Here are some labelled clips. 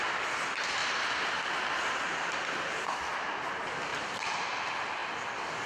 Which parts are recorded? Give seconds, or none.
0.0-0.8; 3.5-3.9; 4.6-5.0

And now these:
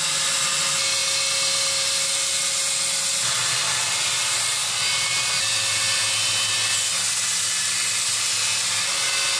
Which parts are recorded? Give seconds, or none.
none